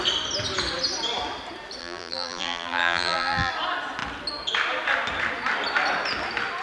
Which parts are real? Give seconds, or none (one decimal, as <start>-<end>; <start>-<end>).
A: 0.0-1.8; 3.5-6.6